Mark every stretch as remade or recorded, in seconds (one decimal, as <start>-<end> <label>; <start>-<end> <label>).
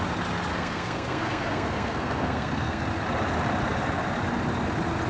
0.0-0.5 recorded; 0.5-2.8 remade; 2.8-5.1 recorded